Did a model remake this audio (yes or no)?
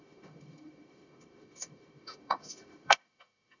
yes